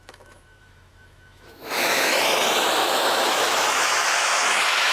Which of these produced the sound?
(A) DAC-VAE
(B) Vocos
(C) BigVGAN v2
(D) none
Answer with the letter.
A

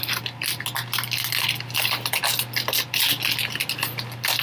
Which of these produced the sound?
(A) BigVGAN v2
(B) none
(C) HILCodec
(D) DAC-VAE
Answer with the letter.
B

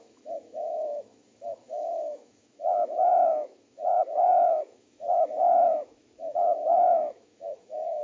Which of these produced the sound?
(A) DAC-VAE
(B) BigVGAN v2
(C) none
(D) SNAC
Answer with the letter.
A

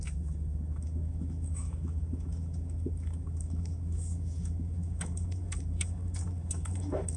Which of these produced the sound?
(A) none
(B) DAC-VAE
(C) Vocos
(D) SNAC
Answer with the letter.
B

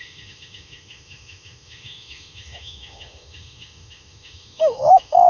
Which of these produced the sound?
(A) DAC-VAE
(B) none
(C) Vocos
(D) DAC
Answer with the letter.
A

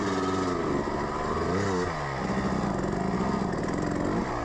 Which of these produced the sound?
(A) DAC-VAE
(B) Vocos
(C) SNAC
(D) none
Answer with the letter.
D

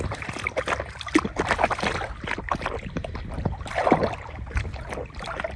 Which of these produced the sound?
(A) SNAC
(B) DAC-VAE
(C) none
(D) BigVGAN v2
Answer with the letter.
C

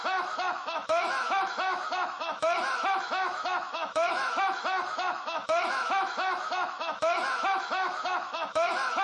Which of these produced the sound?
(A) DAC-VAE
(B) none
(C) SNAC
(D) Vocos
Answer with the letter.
A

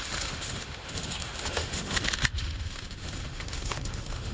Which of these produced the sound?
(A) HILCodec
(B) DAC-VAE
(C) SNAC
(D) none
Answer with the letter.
B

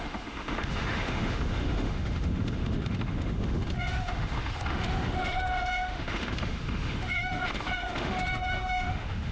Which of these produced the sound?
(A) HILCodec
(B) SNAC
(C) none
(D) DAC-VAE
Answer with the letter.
D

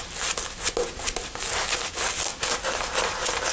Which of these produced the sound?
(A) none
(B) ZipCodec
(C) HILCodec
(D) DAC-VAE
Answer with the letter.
A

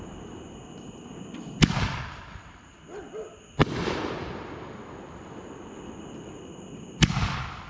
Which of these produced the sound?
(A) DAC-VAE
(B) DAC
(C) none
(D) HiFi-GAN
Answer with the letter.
C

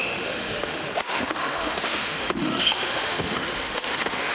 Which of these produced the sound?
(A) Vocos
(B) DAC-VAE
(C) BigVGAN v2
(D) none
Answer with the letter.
B